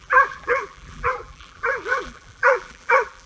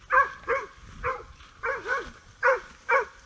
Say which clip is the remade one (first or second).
first